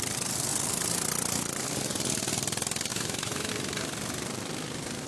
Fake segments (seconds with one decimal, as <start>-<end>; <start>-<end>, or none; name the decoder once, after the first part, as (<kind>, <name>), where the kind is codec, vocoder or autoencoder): 2.9-3.5 (autoencoder, DAC-VAE)